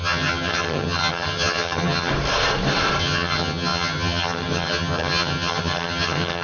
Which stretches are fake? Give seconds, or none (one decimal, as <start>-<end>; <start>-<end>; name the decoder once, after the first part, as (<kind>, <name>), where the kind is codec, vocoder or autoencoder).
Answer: 0.0-2.1 (vocoder, HiFi-GAN); 3.0-6.4